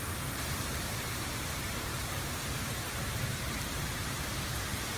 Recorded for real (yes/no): no